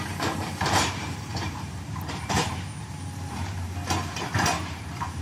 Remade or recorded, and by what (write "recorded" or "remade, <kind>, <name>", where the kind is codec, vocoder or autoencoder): remade, vocoder, BigVGAN v2